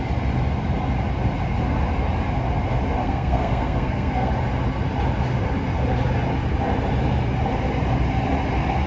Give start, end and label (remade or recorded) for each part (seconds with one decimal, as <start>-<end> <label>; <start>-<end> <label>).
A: 0.0-3.0 recorded; 3.0-4.3 remade; 4.3-8.9 recorded